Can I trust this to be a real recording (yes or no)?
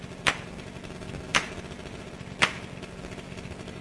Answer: yes